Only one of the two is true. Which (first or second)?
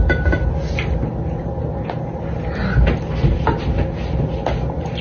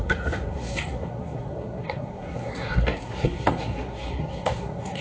first